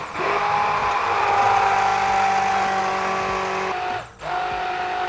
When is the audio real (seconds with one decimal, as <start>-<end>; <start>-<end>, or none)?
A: 0.0-0.8; 1.4-5.1